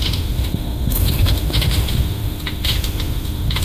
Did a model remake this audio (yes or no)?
yes